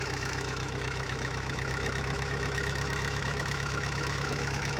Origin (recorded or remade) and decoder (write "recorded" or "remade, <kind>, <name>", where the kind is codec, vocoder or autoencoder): remade, autoencoder, DAC-VAE